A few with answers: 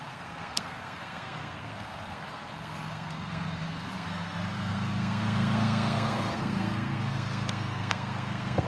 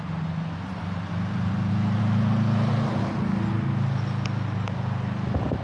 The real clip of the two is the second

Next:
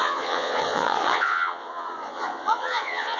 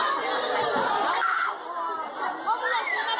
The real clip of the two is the second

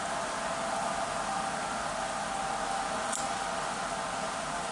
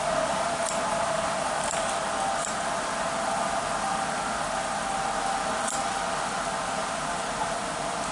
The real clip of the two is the first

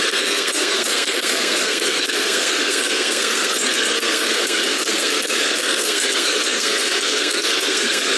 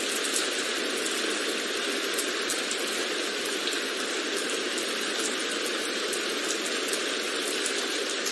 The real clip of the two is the second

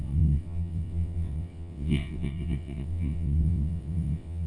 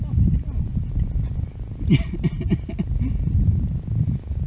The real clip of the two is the second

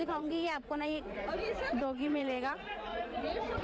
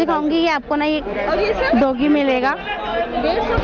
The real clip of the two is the second